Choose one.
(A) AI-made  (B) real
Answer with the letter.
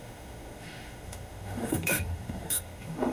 A